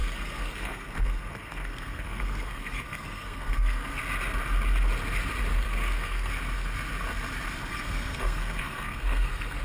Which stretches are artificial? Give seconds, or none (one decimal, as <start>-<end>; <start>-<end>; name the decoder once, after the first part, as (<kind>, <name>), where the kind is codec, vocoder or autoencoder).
0.0-4.0 (codec, SNAC); 5.5-6.3; 7.7-9.6